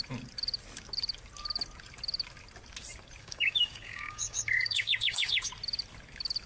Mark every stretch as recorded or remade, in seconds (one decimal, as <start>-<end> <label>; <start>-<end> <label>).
0.0-3.2 recorded; 3.2-5.5 remade; 5.5-6.5 recorded